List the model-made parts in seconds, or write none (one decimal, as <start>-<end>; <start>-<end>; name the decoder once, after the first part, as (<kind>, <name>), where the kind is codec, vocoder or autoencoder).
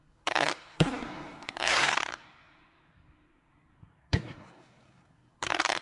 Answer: 0.0-5.8 (codec, SNAC)